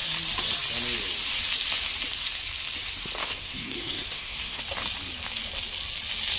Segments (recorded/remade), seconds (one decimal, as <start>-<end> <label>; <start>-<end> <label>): 0.0-3.2 recorded; 3.2-4.6 remade; 4.6-6.4 recorded